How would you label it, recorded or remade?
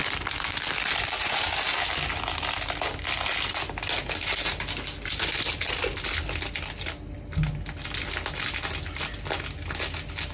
recorded